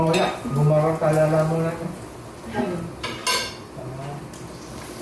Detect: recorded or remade recorded